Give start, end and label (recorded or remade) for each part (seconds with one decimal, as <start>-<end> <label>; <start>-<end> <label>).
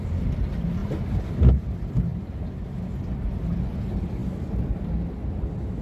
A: 0.0-5.8 recorded